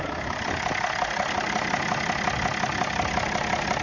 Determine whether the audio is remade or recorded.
recorded